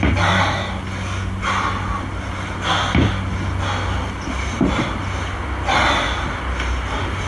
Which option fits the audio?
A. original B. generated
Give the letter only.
A